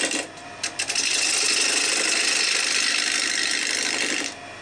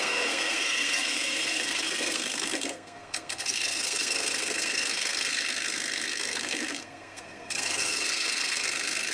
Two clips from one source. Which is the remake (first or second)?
second